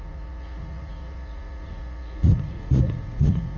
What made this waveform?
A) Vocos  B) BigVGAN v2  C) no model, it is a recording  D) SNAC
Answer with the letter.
A